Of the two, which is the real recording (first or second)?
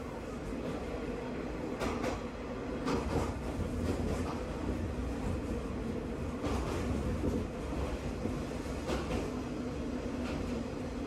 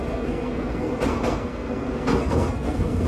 first